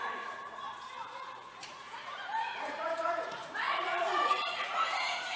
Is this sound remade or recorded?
remade